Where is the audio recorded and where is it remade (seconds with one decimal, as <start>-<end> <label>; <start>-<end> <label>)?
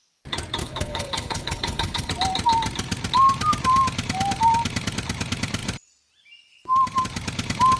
0.0-0.6 recorded; 0.6-2.1 remade; 2.1-7.8 recorded